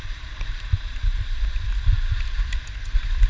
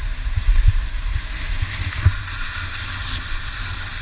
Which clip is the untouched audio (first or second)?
second